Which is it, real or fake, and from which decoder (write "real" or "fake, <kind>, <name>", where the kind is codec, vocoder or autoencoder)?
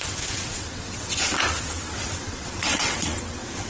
fake, vocoder, WaveNeXt